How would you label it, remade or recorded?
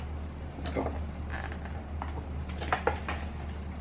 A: recorded